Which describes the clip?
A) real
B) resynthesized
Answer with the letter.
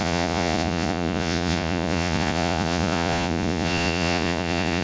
B